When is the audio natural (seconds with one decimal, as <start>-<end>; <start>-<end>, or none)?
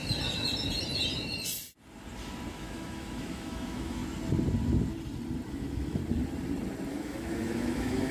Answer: 0.0-2.5; 4.0-5.5; 6.0-6.9